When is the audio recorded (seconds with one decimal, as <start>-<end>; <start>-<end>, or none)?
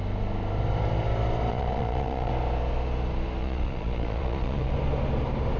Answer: 0.0-1.5; 2.3-3.4; 4.7-5.6